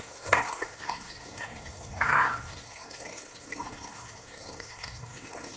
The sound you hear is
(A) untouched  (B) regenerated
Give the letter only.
B